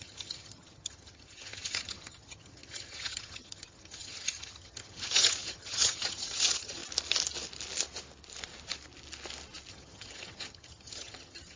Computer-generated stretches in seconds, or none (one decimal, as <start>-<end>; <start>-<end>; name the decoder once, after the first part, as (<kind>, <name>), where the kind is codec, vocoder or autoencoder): 0.0-6.8 (vocoder, HiFi-GAN); 9.7-11.6